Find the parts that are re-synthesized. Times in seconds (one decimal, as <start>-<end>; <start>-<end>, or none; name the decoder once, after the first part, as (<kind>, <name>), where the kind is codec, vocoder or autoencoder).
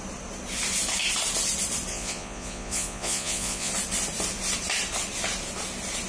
1.9-3.7 (vocoder, Vocos)